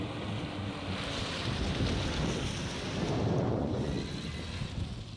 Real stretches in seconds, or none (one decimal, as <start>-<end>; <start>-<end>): 0.0-3.4; 3.9-5.2